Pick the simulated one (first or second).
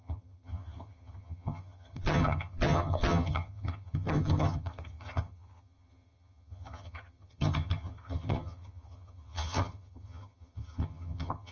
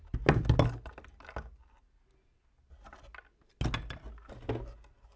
first